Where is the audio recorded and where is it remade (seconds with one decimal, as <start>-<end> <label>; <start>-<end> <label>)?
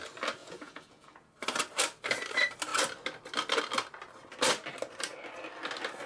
0.0-0.4 recorded; 0.4-1.3 remade; 1.3-6.1 recorded